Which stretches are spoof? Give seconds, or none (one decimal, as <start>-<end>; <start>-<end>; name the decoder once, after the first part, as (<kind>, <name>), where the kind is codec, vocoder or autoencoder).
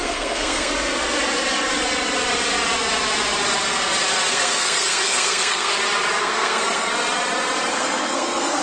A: 0.0-0.7 (codec, SNAC); 4.3-5.7; 6.2-6.9; 7.7-8.6